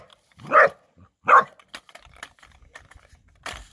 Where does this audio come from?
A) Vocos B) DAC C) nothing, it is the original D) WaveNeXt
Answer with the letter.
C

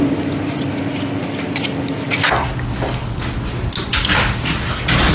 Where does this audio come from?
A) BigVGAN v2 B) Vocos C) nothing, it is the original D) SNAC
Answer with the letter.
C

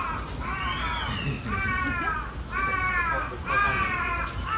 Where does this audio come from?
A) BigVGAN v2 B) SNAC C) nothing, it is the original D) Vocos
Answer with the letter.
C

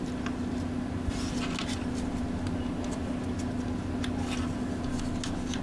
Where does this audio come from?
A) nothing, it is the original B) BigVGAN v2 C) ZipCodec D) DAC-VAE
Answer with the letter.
A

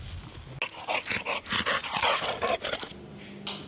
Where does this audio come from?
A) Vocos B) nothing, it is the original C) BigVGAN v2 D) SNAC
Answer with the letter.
B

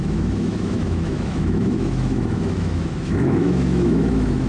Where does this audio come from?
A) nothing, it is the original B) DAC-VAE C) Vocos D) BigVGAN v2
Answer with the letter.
B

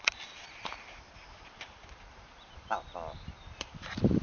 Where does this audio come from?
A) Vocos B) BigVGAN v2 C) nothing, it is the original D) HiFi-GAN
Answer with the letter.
B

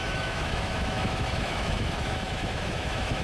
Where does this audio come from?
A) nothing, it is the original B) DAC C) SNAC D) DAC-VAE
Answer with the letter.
D